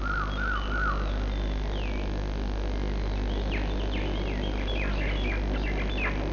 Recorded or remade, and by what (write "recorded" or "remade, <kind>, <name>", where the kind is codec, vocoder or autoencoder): recorded